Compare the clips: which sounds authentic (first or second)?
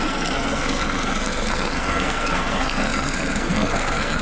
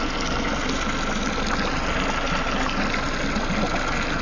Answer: second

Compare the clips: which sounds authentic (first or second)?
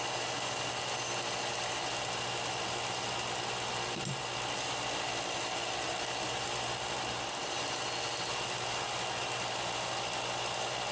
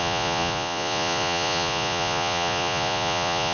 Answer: first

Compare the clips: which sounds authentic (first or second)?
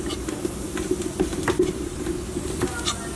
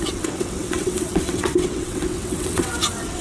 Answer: first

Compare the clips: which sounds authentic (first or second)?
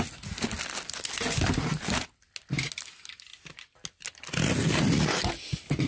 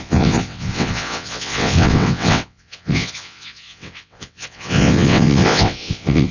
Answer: first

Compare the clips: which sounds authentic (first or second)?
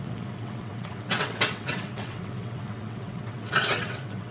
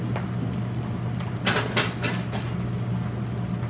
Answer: second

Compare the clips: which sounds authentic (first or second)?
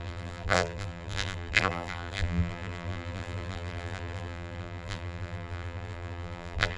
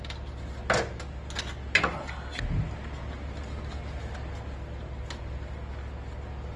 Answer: second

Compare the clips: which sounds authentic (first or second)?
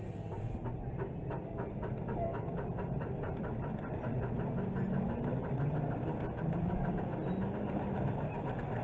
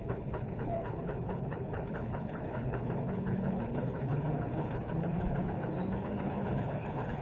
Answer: first